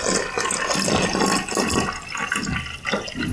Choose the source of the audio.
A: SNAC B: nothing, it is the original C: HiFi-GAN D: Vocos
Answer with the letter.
B